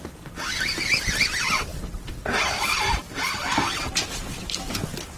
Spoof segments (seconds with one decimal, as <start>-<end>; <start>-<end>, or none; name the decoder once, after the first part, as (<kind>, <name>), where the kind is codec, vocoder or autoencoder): none